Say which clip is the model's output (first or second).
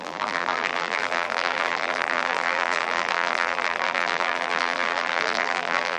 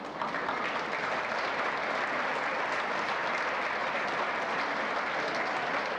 first